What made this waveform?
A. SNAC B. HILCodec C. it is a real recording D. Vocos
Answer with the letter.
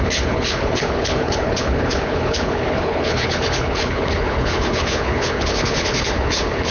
B